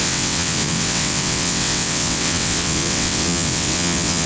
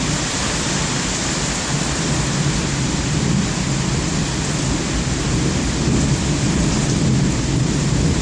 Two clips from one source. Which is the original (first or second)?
second